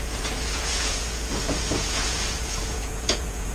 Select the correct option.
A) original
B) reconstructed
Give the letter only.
B